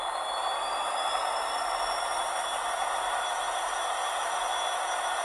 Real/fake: real